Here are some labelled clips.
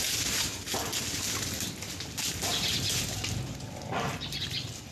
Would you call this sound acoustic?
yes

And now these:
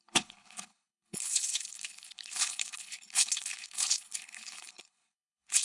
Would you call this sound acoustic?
no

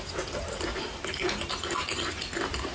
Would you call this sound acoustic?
yes